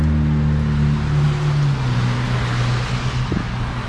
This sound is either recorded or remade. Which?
recorded